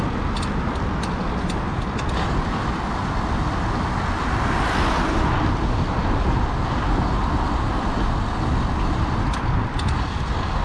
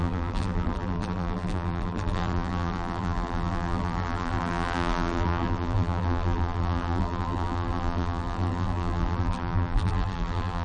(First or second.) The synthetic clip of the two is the second